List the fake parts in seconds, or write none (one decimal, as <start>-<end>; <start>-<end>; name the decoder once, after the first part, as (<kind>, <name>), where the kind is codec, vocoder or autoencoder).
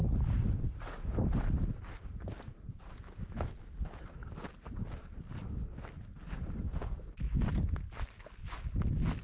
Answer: none